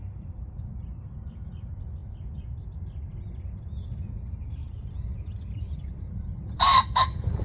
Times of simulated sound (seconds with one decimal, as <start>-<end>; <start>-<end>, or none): 0.0-0.7; 4.6-6.9